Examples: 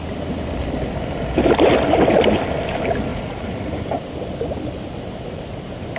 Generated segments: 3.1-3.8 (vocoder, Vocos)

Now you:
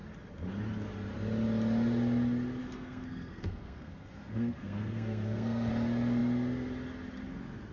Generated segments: 2.6-5.7 (codec, SNAC)

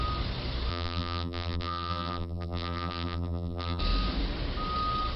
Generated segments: 0.7-3.8 (vocoder, BigVGAN v2)

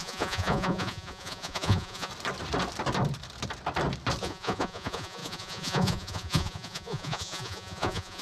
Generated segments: 0.0-2.1 (vocoder, Vocos); 4.2-8.2

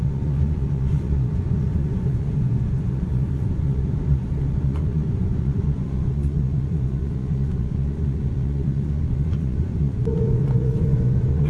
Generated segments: 0.0-11.5 (vocoder, Vocos)

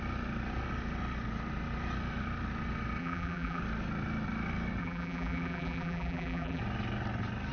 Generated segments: 3.0-3.6 (vocoder, BigVGAN v2); 4.8-6.6

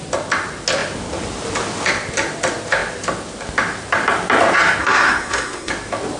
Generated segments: 4.8-5.7 (codec, SNAC)